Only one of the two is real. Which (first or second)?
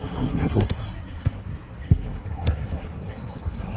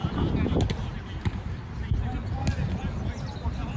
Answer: second